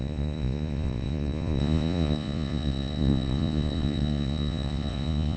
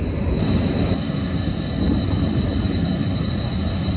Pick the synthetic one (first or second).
first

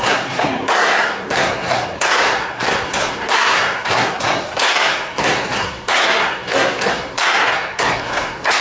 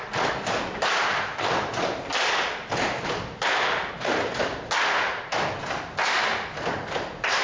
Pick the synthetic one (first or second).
first